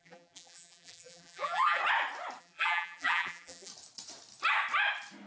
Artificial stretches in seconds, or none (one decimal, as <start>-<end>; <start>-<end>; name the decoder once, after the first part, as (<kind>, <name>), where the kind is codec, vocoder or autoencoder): 0.0-1.8 (vocoder, BigVGAN v2); 2.4-3.7